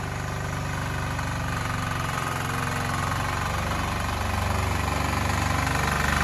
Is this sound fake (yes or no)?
no